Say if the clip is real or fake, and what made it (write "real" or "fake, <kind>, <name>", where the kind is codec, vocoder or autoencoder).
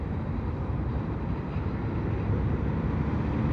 real